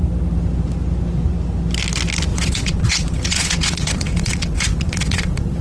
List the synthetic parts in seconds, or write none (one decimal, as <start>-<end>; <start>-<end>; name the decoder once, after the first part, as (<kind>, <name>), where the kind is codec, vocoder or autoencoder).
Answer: 2.3-5.6 (vocoder, Vocos)